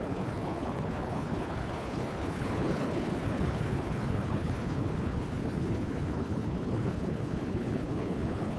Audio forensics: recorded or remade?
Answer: remade